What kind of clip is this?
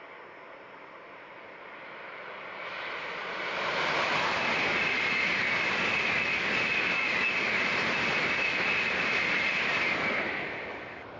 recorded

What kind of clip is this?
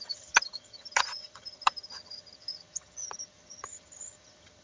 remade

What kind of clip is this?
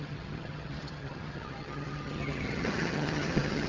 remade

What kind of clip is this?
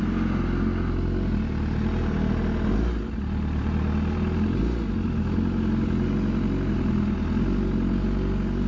recorded